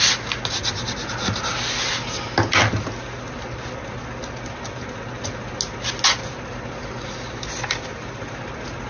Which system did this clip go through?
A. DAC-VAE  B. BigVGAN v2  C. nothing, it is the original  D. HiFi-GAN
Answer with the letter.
C